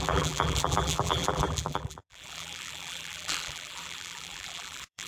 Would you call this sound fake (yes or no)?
yes